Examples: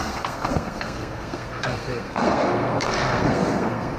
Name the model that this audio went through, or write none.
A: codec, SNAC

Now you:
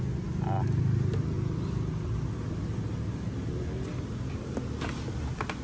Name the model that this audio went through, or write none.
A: none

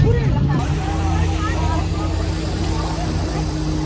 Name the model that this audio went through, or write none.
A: none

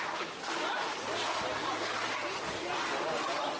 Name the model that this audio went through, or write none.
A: none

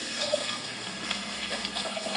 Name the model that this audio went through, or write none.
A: codec, SNAC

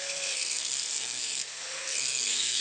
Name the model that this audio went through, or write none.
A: codec, SNAC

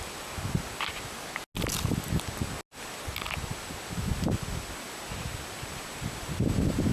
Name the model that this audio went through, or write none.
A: none